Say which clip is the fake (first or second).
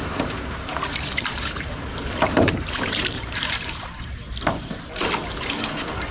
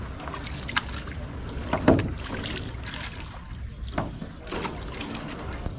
first